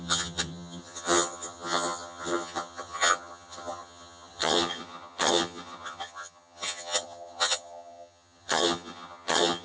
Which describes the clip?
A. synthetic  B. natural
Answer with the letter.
A